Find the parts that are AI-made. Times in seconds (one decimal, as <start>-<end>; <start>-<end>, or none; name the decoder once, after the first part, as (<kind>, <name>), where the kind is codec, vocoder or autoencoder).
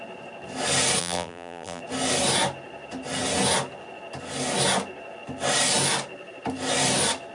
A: 1.0-1.8 (vocoder, BigVGAN v2)